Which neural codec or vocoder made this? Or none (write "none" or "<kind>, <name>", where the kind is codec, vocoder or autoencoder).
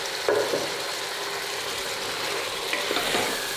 none